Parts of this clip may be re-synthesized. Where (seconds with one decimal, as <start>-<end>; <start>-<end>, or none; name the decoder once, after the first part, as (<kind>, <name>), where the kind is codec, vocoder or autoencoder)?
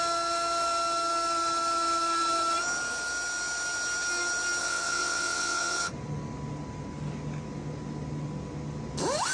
4.6-5.9 (vocoder, WaveNeXt)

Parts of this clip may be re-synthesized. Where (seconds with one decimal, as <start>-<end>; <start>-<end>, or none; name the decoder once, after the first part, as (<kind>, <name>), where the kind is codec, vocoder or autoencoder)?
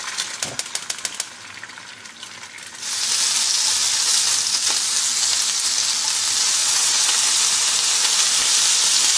6.6-7.1 (vocoder, WaveNeXt)